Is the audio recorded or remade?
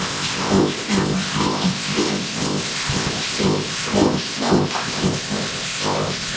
remade